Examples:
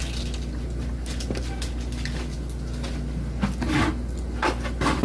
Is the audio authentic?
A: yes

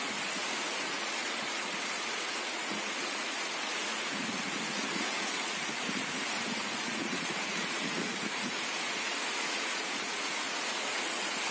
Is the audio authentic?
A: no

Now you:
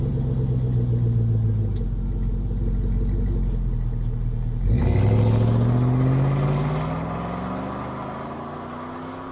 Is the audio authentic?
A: yes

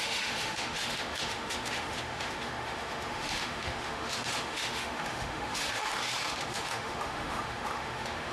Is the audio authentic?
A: no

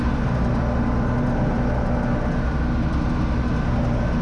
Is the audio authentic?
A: yes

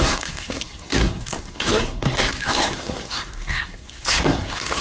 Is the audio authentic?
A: no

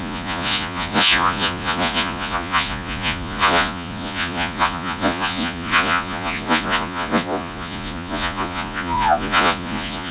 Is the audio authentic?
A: no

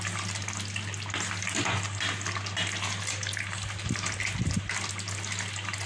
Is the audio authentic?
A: yes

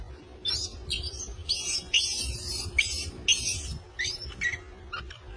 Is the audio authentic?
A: yes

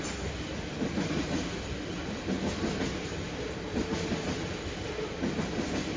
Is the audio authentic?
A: yes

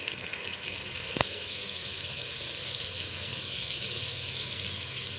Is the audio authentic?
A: no